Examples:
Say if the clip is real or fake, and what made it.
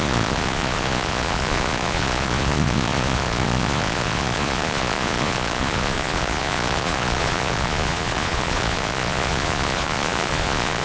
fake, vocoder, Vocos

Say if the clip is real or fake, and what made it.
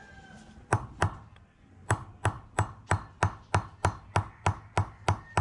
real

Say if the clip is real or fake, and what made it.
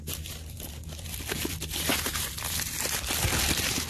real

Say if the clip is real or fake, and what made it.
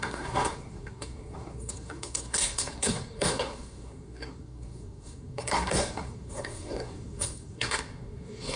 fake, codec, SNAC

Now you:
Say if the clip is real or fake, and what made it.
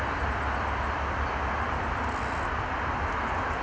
real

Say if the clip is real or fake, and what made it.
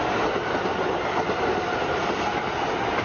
real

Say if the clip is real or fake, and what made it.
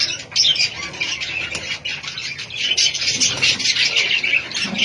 real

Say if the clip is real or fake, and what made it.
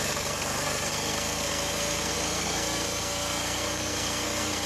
fake, codec, SNAC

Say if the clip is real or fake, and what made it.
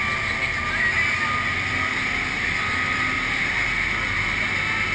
real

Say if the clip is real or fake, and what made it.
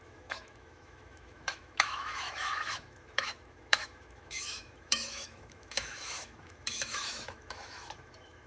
fake, autoencoder, DAC-VAE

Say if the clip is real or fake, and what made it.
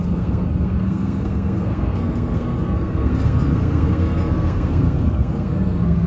fake, codec, SNAC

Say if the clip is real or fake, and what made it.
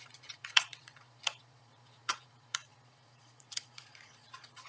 fake, vocoder, Vocos